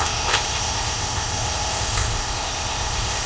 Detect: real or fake fake